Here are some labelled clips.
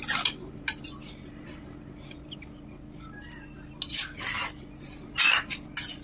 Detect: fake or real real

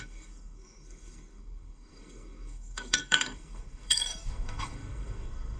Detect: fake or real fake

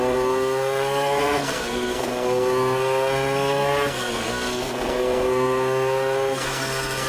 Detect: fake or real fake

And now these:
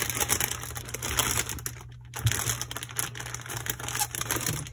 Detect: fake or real real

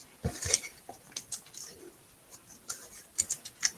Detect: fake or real real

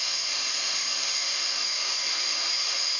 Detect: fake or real fake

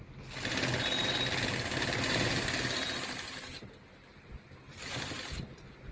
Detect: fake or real real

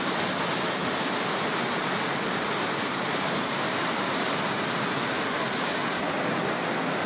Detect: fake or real real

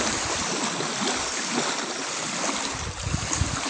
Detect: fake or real real